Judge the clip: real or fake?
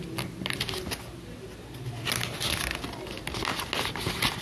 real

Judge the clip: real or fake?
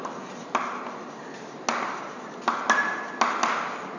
real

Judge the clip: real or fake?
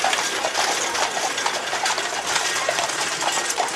real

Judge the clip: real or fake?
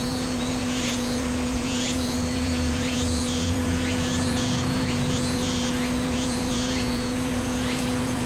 fake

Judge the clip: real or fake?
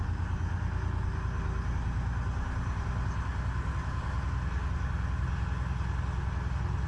real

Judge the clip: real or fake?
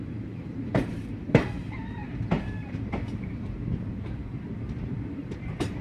fake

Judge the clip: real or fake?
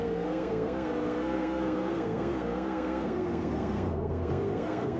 fake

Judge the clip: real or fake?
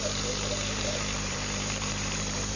fake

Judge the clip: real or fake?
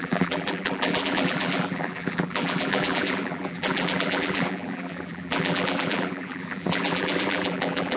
fake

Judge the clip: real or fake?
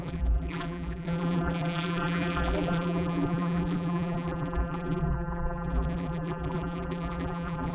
fake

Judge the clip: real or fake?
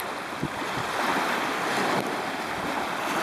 real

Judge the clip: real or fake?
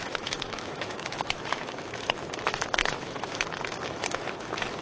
fake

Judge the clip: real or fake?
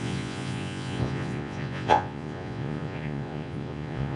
fake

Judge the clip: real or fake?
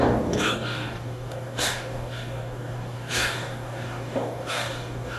fake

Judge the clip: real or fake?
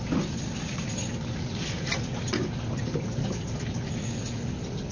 real